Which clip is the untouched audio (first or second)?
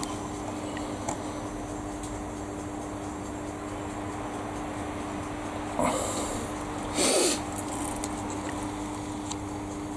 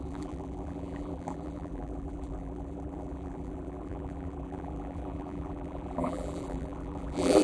first